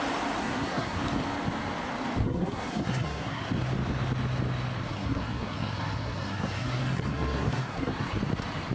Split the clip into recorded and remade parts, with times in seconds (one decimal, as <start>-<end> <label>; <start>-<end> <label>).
0.0-0.4 recorded; 0.4-1.0 remade; 1.0-2.2 recorded; 2.2-3.4 remade; 3.4-4.8 recorded; 4.8-8.2 remade; 8.2-8.7 recorded